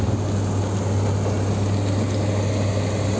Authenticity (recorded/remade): recorded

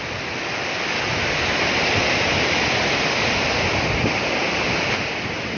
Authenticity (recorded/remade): recorded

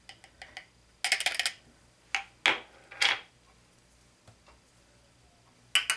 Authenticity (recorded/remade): recorded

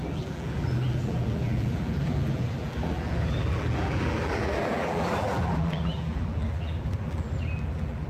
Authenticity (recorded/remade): remade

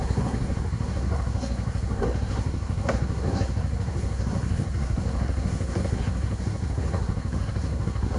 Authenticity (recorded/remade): remade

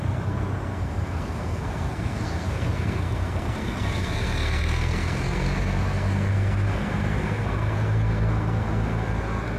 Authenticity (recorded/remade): remade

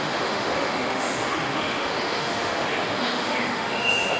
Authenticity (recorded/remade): remade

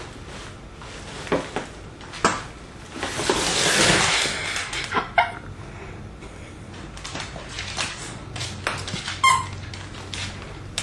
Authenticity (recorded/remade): recorded